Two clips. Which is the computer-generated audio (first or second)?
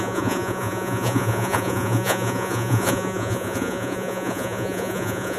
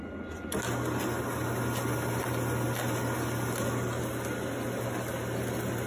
first